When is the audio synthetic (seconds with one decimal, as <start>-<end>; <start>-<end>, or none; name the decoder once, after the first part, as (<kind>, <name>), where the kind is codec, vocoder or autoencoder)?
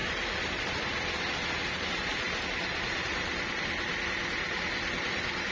none